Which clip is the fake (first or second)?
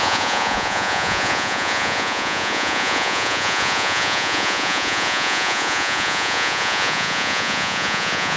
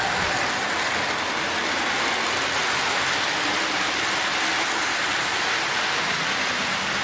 first